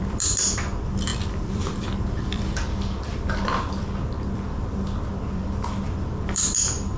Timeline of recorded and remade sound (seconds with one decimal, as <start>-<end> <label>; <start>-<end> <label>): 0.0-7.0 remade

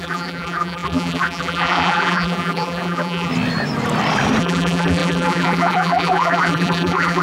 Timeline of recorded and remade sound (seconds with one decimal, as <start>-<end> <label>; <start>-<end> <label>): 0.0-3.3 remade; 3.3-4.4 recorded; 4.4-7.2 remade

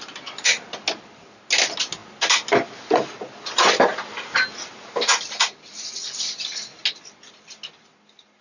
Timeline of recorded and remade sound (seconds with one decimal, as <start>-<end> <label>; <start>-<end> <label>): 0.0-8.4 recorded

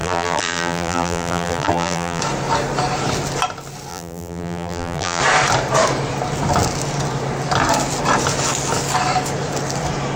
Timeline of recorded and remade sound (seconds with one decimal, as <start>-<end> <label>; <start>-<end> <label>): 0.0-2.2 remade; 2.2-3.9 recorded; 3.9-5.2 remade; 5.2-10.2 recorded

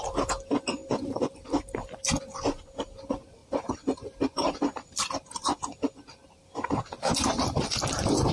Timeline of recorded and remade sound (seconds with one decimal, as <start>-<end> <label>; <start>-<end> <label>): 0.0-0.8 recorded; 0.8-1.9 remade; 1.9-3.4 recorded; 3.4-7.8 remade; 7.8-8.3 recorded